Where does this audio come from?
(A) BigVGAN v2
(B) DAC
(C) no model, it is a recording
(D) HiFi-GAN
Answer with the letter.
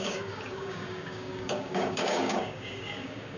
B